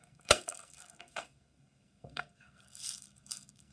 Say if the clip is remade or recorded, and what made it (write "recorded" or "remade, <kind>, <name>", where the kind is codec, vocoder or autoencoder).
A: remade, codec, SNAC